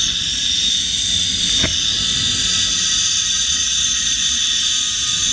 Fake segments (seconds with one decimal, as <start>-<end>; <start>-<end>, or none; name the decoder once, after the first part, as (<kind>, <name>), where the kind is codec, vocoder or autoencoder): 3.4-4.6 (vocoder, Vocos)

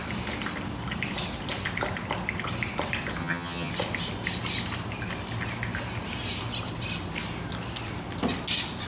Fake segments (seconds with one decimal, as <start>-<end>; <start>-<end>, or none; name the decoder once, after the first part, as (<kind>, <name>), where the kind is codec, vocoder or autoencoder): 3.2-3.7 (vocoder, HiFi-GAN)

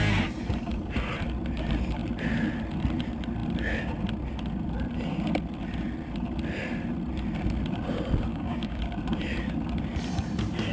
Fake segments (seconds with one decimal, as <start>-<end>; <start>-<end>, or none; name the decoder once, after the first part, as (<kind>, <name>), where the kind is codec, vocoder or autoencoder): 8.3-8.8 (codec, DAC)

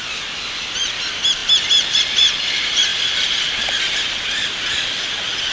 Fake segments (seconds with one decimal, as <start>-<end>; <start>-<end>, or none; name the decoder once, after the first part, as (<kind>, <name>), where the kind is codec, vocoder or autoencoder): none

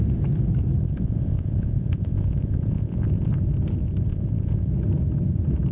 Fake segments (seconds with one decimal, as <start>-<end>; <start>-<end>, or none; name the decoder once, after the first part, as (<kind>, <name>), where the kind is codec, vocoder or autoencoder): 0.8-3.3 (vocoder, Vocos); 4.1-4.7

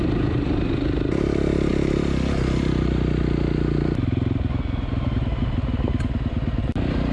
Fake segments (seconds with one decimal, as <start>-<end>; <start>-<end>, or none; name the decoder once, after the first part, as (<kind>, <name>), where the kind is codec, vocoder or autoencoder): none